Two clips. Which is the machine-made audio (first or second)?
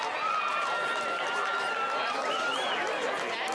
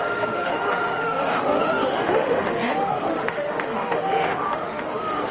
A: second